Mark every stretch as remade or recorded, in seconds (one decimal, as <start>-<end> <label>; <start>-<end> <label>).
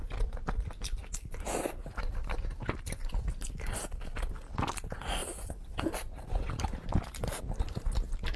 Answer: 0.0-1.8 recorded; 1.8-3.8 remade; 3.8-5.2 recorded; 5.2-7.4 remade; 7.4-8.4 recorded